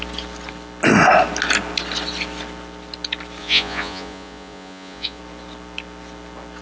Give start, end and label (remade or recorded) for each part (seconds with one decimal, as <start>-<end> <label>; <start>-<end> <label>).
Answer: 0.0-3.4 recorded; 3.4-5.2 remade; 5.2-6.6 recorded